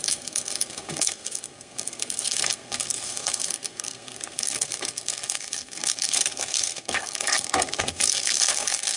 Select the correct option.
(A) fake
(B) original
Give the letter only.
A